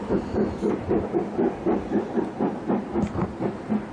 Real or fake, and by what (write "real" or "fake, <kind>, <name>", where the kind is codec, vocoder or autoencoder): real